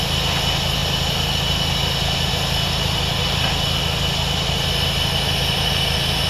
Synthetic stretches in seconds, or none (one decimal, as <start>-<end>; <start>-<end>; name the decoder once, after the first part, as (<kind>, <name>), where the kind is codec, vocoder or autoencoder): none